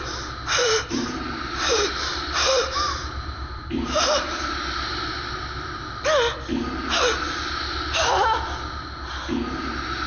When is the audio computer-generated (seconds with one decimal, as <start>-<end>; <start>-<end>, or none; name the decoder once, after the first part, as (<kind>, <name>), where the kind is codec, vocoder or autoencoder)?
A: 0.6-5.8 (vocoder, BigVGAN v2)